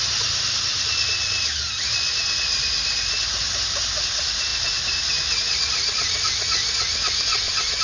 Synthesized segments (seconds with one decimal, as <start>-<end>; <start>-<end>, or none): 7.3-7.8